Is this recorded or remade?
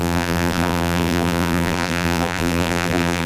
remade